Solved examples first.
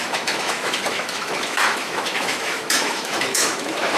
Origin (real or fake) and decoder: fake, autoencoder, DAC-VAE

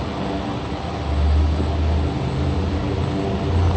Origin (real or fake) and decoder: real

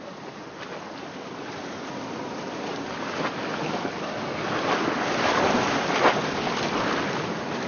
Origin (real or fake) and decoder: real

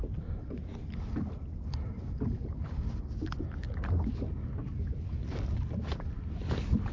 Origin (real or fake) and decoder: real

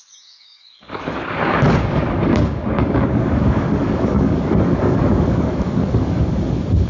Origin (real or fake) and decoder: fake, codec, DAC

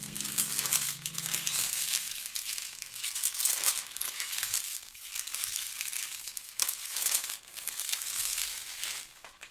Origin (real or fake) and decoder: fake, codec, SNAC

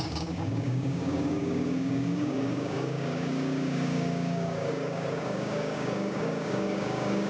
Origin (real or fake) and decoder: fake, codec, DAC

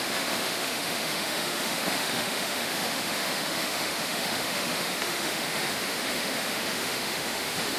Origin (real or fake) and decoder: fake, autoencoder, DAC-VAE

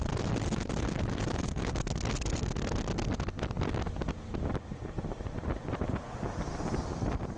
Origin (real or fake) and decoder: real